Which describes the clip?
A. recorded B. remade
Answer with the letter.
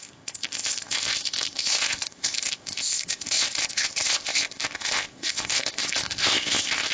B